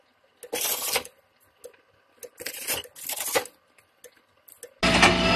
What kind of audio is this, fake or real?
real